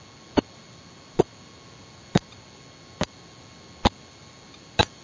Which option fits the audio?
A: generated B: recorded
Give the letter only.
B